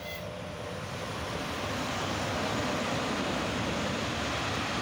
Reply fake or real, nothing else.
real